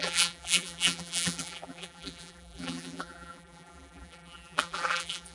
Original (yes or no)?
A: no